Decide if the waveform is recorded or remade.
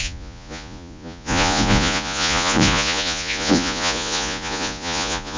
remade